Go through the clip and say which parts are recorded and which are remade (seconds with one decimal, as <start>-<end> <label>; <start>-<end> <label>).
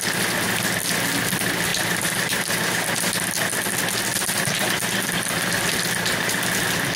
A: 0.0-1.7 recorded; 1.7-2.8 remade; 2.8-4.1 recorded; 4.1-4.7 remade; 4.7-7.0 recorded